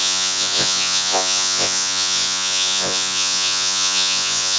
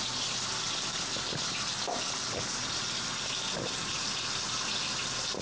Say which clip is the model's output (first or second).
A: first